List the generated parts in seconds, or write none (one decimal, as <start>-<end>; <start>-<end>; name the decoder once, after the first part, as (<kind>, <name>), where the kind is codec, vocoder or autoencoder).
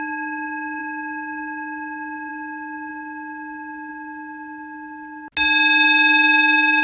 none